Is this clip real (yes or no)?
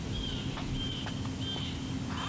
yes